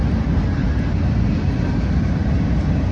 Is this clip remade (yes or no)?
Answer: no